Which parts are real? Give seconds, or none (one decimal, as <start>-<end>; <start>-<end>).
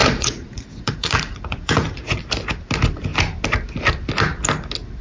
2.2-5.0